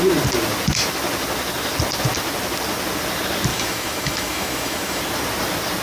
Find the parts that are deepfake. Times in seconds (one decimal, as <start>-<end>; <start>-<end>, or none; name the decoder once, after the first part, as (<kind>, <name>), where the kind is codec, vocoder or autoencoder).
3.5-5.0 (autoencoder, DAC-VAE)